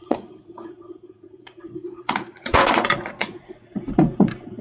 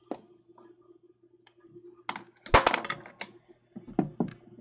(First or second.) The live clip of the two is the second